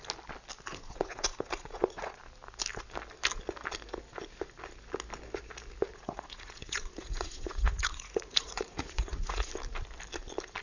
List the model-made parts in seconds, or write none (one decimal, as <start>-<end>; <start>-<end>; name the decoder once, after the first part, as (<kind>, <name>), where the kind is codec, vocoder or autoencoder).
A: 0.7-2.2 (vocoder, Vocos); 5.9-9.5